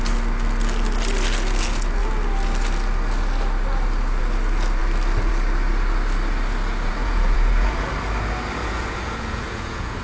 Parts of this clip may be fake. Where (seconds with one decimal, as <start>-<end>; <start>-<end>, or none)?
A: 7.0-7.9; 8.6-10.0